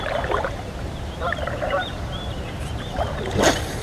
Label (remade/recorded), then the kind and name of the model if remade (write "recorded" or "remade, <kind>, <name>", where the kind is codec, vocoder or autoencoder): remade, vocoder, BigVGAN v2